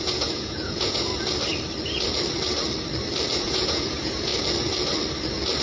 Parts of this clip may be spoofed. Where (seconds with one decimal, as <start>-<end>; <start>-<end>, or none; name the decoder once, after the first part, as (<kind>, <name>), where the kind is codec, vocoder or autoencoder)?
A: 0.0-1.1 (vocoder, Vocos); 3.4-4.3